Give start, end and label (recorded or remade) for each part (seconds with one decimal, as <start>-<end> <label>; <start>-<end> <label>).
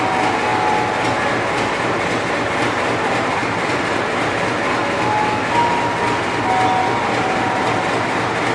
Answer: 0.0-3.4 recorded; 3.4-4.1 remade; 4.1-8.5 recorded